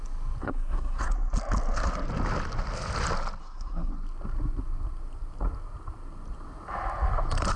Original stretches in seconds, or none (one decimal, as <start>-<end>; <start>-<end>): 0.0-0.4; 1.1-3.4; 3.9-7.6